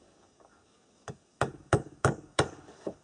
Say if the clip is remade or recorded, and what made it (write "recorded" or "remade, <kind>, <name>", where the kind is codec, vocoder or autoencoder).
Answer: remade, codec, DAC